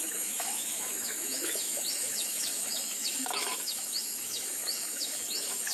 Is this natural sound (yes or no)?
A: no